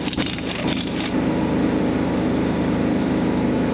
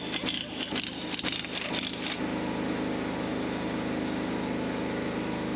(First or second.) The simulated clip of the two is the first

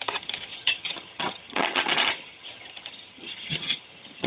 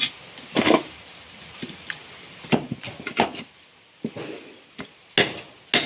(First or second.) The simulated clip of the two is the first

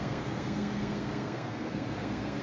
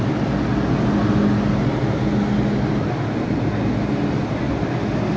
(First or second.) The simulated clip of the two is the first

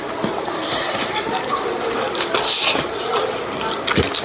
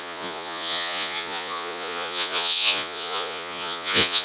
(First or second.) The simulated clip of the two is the second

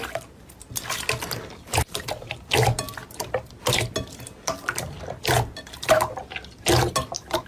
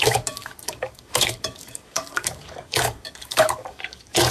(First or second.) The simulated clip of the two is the second